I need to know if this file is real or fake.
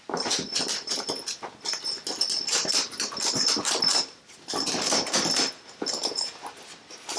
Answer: real